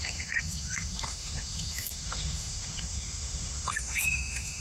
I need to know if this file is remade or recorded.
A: remade